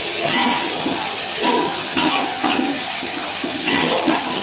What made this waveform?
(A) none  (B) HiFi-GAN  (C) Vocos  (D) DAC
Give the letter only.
B